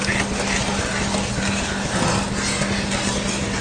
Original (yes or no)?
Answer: yes